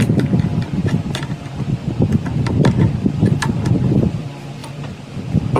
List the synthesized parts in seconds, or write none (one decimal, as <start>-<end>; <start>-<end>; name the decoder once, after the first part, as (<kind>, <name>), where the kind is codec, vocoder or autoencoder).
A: 0.0-5.6 (vocoder, BigVGAN v2)